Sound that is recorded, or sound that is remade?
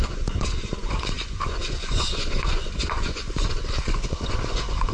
remade